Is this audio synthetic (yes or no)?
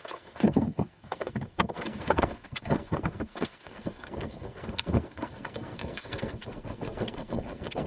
yes